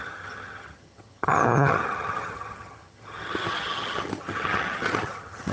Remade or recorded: remade